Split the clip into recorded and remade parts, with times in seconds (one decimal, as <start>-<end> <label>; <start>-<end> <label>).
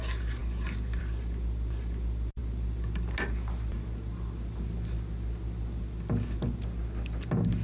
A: 0.0-7.6 recorded